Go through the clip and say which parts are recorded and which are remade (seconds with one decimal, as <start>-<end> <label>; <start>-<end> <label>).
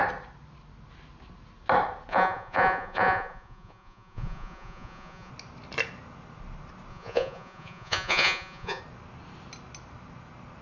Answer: 0.0-2.1 recorded; 2.1-5.3 remade; 5.3-6.9 recorded; 6.9-8.8 remade; 8.8-10.6 recorded